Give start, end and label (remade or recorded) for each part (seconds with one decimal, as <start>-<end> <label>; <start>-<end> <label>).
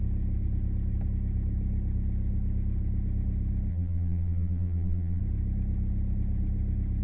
0.0-3.7 recorded; 3.7-5.2 remade; 5.2-7.0 recorded